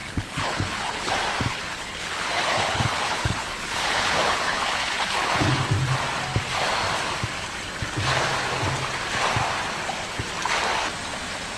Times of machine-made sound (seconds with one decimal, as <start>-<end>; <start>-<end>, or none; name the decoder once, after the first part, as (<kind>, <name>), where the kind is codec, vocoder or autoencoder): 0.0-1.1 (codec, HILCodec); 1.5-5.6